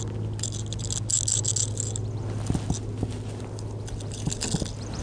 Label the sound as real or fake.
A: real